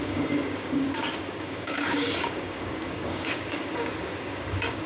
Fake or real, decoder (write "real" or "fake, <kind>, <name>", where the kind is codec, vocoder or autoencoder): fake, codec, DAC